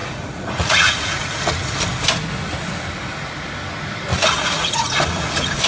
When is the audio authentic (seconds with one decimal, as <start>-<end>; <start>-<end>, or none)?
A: 1.5-4.1